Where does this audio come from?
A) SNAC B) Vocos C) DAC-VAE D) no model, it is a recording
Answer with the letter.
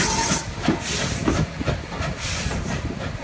D